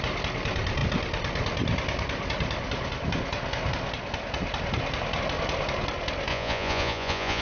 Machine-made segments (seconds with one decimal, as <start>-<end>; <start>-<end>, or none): 6.3-7.4